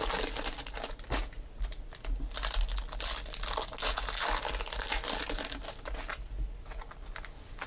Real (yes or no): yes